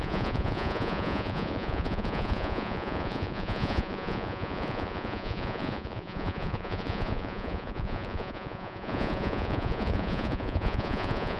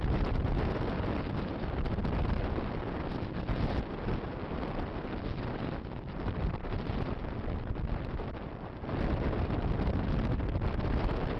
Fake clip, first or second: first